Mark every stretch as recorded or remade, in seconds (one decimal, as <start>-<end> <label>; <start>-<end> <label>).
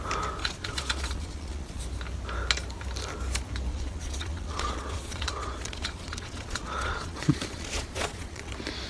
0.0-0.4 recorded; 0.4-1.8 remade; 1.8-3.7 recorded; 3.7-8.5 remade; 8.5-8.9 recorded